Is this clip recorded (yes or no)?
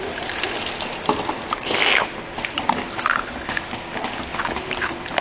yes